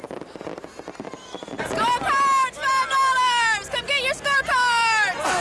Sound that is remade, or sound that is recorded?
recorded